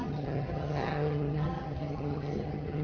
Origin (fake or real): fake